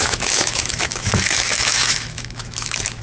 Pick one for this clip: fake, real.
fake